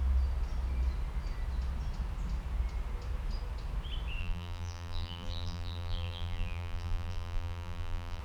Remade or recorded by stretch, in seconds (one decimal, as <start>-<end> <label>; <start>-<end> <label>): 0.0-4.2 recorded; 4.2-8.2 remade